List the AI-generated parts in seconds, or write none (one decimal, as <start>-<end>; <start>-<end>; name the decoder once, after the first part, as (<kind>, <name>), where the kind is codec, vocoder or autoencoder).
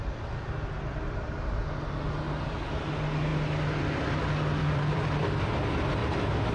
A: 4.6-5.6 (vocoder, BigVGAN v2); 6.0-6.5